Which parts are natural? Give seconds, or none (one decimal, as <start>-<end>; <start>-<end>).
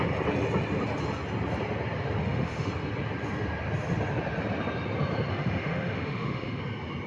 0.0-2.2; 2.7-5.3; 6.6-7.1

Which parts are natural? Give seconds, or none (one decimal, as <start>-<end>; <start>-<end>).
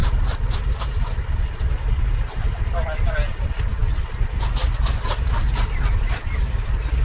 0.0-7.0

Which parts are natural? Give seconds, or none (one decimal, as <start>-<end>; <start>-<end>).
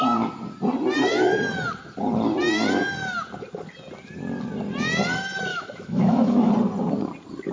0.0-5.5; 6.5-7.5